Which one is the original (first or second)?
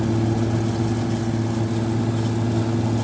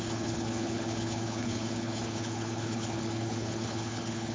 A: first